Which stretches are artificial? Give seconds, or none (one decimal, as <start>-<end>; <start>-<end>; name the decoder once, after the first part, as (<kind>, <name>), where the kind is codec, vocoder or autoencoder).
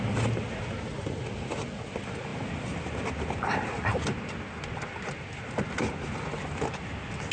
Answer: none